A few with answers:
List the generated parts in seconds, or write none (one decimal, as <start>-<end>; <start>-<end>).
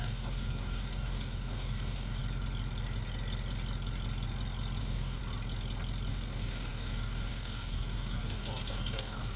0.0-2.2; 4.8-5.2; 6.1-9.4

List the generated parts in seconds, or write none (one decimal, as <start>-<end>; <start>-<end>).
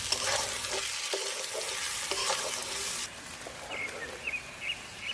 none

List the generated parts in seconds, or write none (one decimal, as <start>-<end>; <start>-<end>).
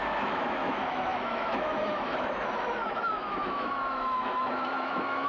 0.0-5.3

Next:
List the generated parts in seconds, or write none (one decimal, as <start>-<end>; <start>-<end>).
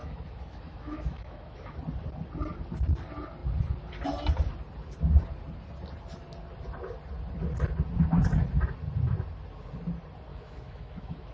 0.0-1.8; 10.3-11.3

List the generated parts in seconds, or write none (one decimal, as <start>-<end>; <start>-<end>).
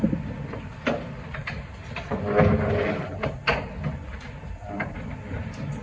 none